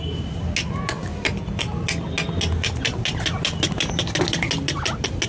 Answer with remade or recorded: recorded